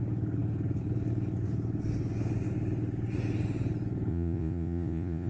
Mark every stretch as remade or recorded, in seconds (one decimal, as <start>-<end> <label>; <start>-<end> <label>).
0.0-4.1 recorded; 4.1-5.3 remade